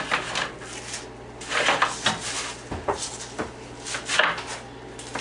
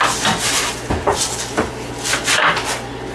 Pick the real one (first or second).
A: first